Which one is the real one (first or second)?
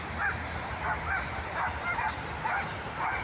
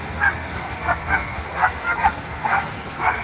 first